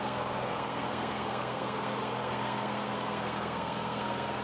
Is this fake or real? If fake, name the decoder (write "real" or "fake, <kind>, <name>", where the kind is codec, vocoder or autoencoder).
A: fake, codec, SNAC